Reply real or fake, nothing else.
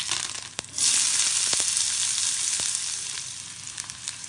real